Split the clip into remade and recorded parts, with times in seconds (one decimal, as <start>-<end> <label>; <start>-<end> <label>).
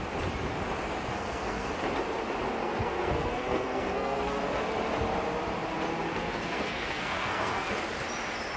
0.0-1.1 recorded; 1.1-1.7 remade; 1.7-2.6 recorded; 2.6-4.4 remade; 4.4-6.1 recorded; 6.1-7.7 remade; 7.7-8.6 recorded